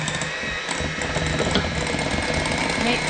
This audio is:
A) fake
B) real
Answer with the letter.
B